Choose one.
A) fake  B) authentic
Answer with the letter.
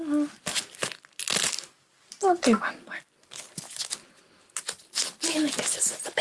B